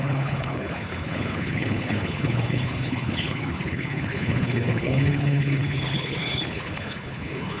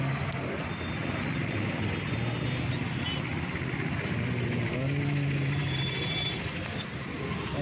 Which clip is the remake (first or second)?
first